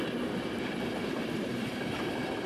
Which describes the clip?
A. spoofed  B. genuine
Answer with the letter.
B